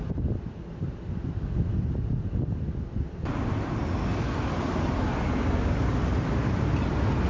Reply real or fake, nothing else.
real